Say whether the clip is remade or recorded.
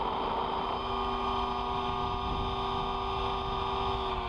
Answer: recorded